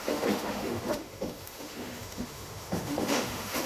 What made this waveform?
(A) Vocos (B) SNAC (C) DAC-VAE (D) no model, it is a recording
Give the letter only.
C